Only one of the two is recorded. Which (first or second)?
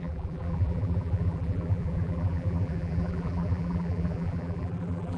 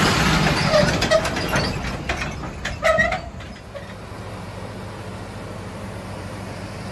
second